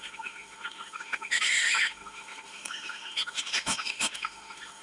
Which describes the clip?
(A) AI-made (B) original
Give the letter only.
A